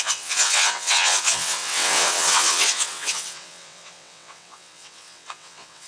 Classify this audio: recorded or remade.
remade